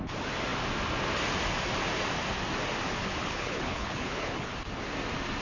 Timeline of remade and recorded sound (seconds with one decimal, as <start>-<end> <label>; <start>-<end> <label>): 0.0-3.2 recorded; 3.2-4.5 remade; 4.5-5.4 recorded